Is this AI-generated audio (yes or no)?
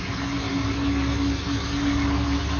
no